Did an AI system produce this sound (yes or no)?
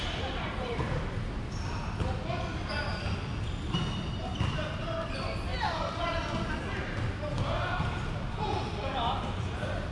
no